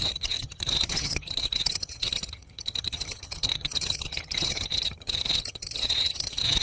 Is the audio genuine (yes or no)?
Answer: no